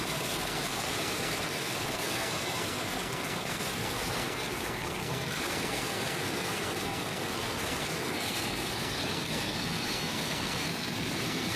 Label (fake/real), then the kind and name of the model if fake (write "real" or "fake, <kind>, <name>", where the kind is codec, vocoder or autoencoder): fake, codec, SNAC